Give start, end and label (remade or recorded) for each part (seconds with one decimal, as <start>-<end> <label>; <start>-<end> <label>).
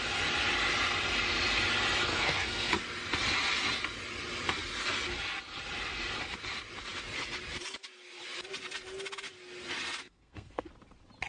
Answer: 0.0-2.1 recorded; 2.1-2.7 remade; 2.7-10.0 recorded; 10.0-10.7 remade; 10.7-11.3 recorded